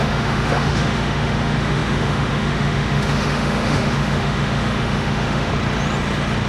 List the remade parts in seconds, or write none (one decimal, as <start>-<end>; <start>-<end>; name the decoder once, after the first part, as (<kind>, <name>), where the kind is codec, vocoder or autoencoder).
0.0-5.5 (autoencoder, DAC-VAE)